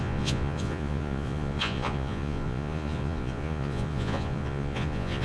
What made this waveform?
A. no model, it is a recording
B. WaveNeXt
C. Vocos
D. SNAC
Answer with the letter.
C